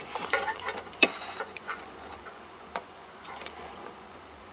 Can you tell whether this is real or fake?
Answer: fake